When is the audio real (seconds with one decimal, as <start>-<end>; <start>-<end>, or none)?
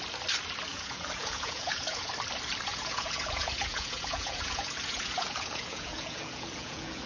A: 0.0-0.7; 2.1-2.7